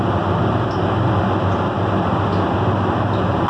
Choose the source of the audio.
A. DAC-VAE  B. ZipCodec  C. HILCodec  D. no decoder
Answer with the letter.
D